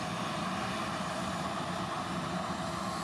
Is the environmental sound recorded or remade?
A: recorded